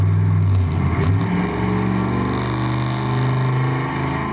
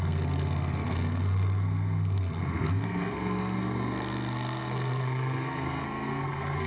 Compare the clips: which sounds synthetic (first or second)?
second